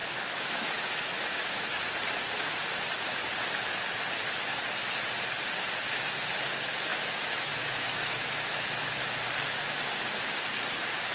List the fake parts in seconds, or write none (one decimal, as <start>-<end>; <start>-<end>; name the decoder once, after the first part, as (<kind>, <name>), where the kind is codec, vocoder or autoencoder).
0.0-1.6 (autoencoder, DAC-VAE); 6.9-9.0